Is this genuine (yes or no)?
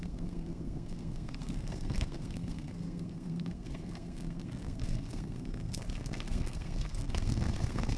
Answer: no